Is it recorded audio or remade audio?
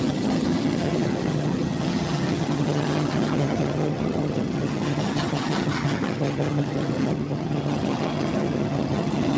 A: remade